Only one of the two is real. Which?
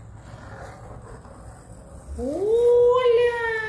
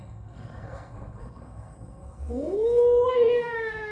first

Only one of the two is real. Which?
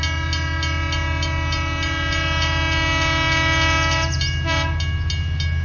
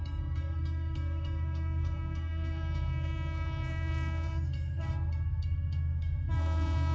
first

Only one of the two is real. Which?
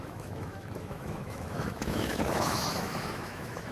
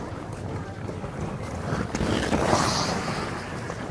second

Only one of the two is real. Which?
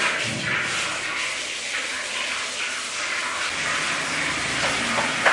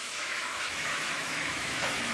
first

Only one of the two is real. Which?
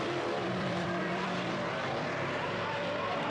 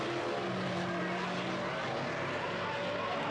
second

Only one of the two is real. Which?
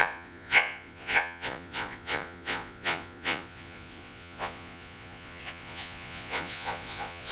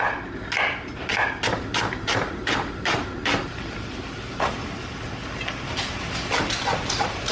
second